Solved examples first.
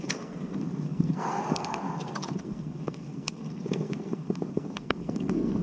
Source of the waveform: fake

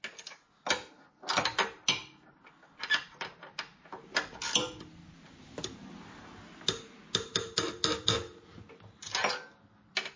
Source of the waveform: real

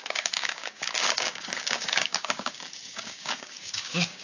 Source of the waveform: fake